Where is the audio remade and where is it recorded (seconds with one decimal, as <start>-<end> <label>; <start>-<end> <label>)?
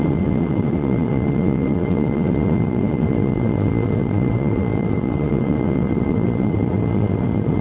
0.0-7.6 remade